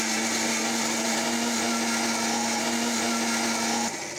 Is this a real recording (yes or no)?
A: yes